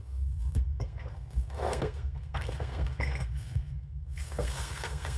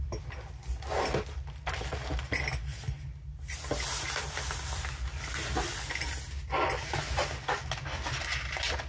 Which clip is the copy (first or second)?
first